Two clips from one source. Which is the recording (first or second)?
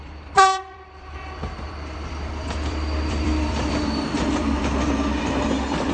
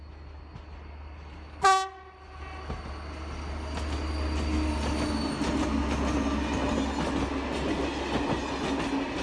second